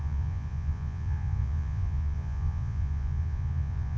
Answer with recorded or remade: remade